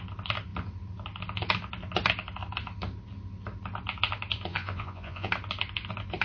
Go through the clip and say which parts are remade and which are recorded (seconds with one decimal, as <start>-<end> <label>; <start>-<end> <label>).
0.0-4.5 recorded; 4.5-5.3 remade; 5.3-6.2 recorded